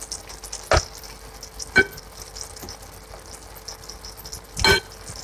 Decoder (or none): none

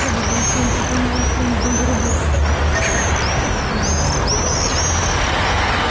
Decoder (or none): none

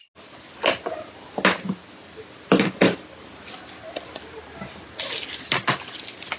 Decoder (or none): none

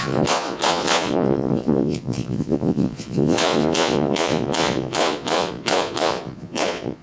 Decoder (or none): vocoder, Vocos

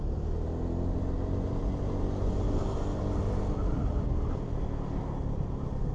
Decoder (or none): none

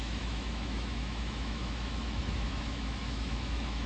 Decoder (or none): autoencoder, DAC-VAE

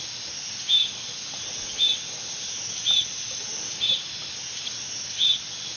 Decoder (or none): none